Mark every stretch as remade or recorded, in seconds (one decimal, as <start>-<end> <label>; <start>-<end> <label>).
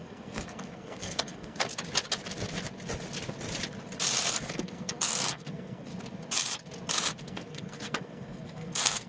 0.0-1.7 remade; 1.7-4.3 recorded; 4.3-5.9 remade; 5.9-7.2 recorded; 7.2-9.1 remade